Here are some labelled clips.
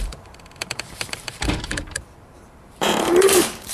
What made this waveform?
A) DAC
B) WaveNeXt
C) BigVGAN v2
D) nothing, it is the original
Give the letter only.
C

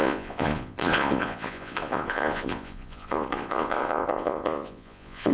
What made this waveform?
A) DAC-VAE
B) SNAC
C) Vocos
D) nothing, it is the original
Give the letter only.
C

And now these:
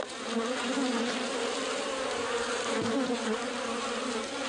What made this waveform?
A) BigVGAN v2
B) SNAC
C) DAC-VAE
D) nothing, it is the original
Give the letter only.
D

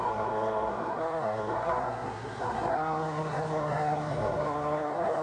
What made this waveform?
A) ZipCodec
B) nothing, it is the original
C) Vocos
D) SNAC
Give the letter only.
D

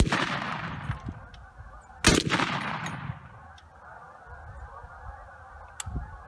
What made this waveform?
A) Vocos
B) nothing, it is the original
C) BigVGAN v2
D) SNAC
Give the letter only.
B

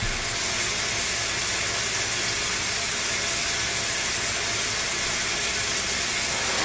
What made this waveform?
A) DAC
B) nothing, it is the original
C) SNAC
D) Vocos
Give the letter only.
B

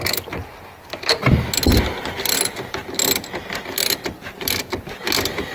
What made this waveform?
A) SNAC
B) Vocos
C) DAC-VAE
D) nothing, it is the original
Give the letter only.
D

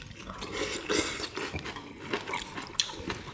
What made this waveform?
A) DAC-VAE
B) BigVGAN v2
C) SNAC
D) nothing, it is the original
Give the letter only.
D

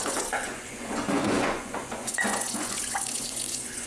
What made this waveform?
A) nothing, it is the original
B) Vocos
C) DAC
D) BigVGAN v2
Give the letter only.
B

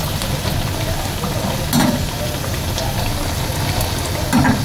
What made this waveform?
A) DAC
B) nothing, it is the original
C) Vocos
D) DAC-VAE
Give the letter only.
B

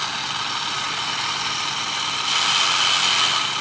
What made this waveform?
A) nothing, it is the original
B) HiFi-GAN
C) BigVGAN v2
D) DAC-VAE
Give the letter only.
A